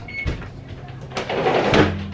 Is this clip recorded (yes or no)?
yes